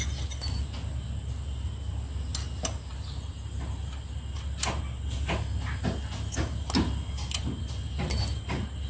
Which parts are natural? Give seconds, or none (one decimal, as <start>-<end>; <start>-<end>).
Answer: 0.0-8.9